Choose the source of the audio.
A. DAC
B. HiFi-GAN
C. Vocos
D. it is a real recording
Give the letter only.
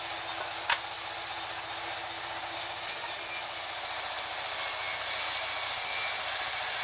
D